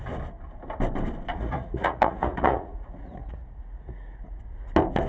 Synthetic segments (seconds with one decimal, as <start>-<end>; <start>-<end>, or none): 1.3-4.4